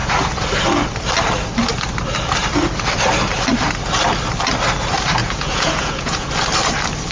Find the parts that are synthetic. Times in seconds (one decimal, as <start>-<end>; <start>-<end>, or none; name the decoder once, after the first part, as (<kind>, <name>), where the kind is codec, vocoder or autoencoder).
5.2-6.3 (vocoder, Vocos)